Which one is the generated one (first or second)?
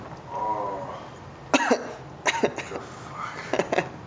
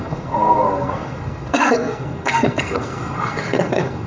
second